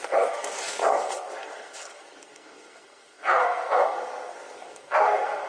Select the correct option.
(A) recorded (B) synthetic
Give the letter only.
B